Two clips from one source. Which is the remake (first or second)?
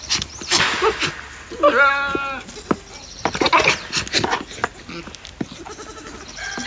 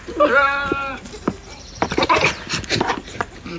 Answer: second